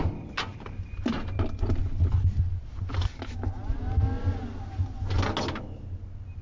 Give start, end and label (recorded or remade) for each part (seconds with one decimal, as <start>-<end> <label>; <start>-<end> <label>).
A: 0.0-6.4 recorded